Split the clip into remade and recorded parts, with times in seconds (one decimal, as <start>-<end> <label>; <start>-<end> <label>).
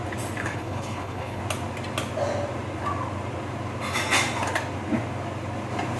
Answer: 0.0-0.4 recorded; 0.4-1.4 remade; 1.4-6.0 recorded